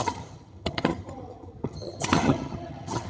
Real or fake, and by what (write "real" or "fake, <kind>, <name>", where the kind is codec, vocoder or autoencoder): fake, vocoder, HiFi-GAN